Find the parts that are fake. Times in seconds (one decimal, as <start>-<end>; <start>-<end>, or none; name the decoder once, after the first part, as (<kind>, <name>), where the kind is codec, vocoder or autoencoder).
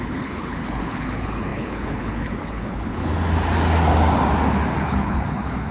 0.0-3.1 (codec, HILCodec); 4.8-5.7